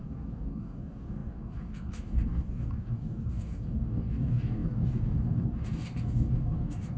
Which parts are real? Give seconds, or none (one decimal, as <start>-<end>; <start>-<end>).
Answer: none